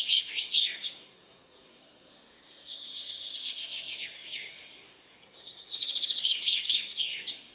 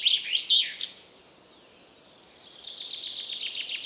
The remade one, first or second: first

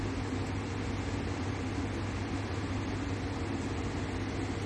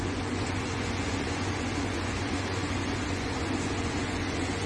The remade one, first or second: second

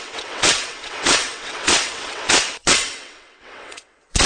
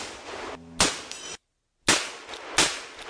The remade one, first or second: first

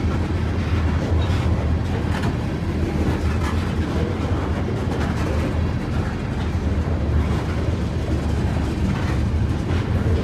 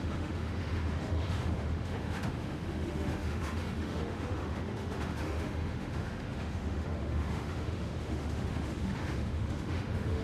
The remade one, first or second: second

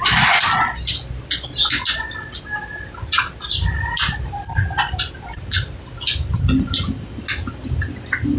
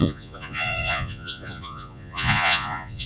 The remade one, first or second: second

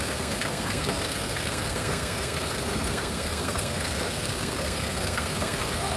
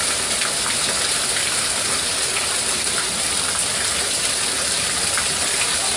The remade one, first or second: first